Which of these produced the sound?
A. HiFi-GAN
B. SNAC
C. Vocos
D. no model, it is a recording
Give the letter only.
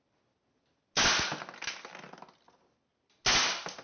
D